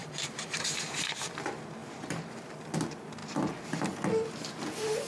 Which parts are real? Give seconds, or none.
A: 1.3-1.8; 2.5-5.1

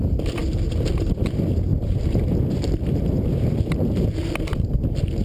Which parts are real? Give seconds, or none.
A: 0.0-1.7; 4.7-5.2

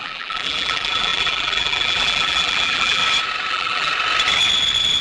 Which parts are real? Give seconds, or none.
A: 3.0-3.5; 3.9-5.0

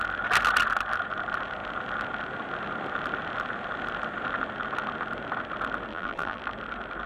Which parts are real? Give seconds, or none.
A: 0.0-5.9; 6.4-7.1

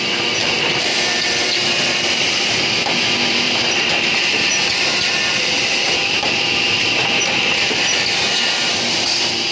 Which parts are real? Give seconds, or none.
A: 0.0-0.4; 3.9-4.9; 8.7-9.5